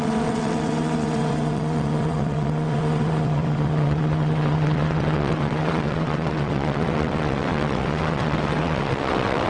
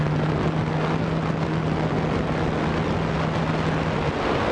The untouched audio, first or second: second